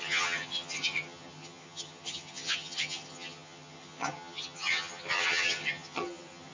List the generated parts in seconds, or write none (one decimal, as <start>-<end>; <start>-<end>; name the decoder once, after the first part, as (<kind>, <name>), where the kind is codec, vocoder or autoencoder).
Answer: 0.0-6.5 (vocoder, HiFi-GAN)